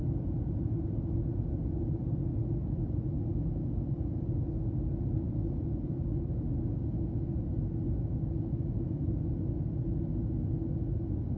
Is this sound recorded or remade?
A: recorded